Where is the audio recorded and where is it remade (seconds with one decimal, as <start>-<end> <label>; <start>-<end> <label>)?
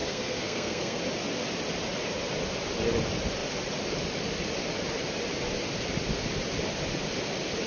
0.0-1.0 remade; 1.0-7.7 recorded